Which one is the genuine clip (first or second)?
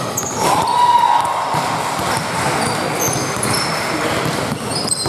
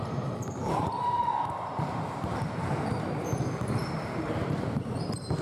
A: first